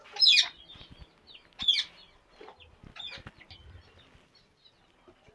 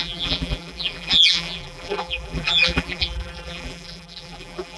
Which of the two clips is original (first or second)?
first